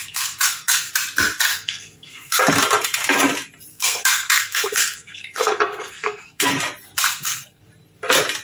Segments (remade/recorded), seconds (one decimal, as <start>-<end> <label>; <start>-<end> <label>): 0.0-0.9 remade; 0.9-1.5 recorded; 1.5-2.4 remade; 2.4-3.7 recorded; 3.7-6.5 remade; 6.5-7.1 recorded; 7.1-7.6 remade; 7.6-8.4 recorded